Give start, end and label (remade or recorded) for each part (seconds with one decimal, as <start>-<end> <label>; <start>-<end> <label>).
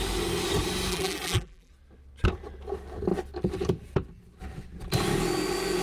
0.0-0.9 recorded; 0.9-1.7 remade; 1.7-5.8 recorded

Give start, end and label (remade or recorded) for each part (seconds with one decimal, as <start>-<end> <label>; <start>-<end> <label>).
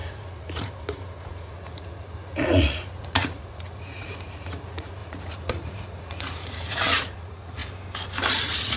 0.0-7.6 remade; 7.6-8.3 recorded; 8.3-8.8 remade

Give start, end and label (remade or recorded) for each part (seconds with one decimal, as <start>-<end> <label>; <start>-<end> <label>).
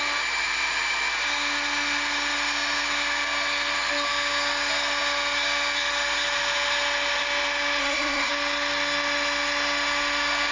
0.0-7.8 recorded; 7.8-8.3 remade; 8.3-10.5 recorded